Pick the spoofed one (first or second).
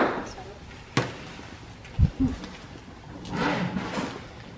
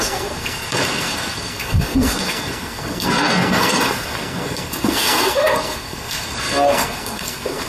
second